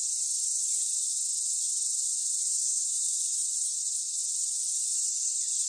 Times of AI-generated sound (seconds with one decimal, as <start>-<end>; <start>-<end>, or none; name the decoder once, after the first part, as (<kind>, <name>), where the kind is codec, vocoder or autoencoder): 3.3-4.2 (vocoder, Vocos); 4.9-5.7